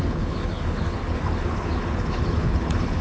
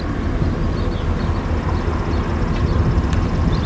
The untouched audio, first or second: second